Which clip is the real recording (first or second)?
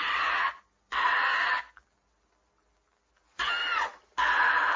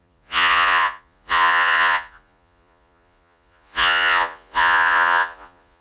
first